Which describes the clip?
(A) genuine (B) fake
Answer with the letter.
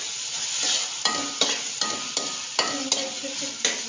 A